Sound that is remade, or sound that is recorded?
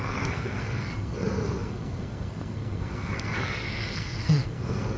remade